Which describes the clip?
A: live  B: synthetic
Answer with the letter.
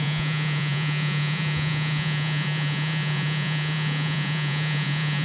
B